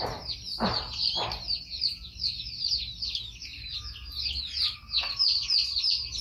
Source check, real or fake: real